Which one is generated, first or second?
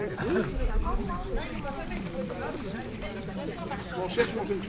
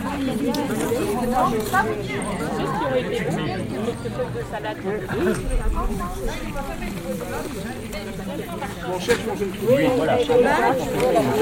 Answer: first